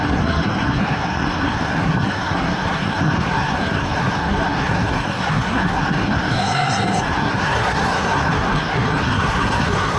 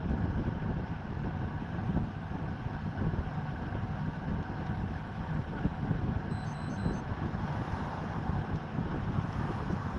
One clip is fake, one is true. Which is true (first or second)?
second